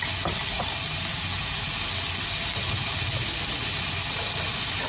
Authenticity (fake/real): real